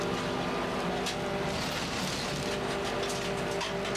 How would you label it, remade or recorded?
recorded